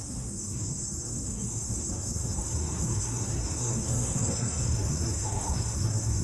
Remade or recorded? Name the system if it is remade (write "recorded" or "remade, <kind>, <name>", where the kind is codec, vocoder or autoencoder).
remade, codec, SNAC